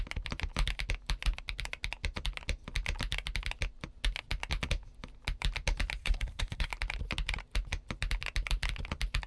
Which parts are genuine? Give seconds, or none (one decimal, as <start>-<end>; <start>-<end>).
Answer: 0.0-6.0; 6.7-9.3